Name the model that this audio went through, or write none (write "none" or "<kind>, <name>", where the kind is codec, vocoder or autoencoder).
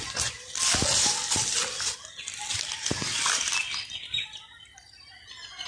none